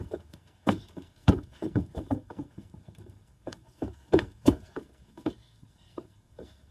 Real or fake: fake